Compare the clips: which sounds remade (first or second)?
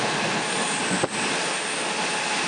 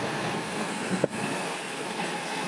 second